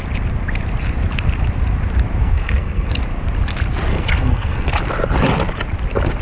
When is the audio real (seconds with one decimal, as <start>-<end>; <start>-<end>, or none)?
0.0-2.2; 3.0-3.9; 4.7-6.2